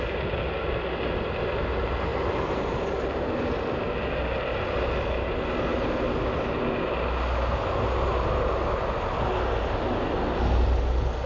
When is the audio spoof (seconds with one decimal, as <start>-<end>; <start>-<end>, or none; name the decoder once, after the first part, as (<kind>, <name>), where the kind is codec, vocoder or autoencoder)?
2.1-3.2 (vocoder, BigVGAN v2)